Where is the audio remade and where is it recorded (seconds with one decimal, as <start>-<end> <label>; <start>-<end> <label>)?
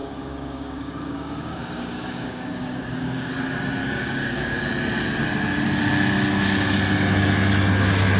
0.0-3.3 remade; 3.3-3.8 recorded; 3.8-4.6 remade; 4.6-8.2 recorded